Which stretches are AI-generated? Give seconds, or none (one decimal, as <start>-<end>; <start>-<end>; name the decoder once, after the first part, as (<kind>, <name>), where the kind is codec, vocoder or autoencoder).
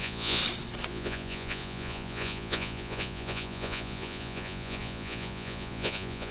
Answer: 0.0-0.4 (vocoder, Vocos); 0.9-6.3